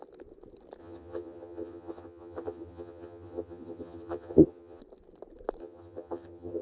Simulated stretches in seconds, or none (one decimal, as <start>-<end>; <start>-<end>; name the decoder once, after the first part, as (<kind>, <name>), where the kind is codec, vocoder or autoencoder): 0.8-4.8 (vocoder, HiFi-GAN); 5.6-6.6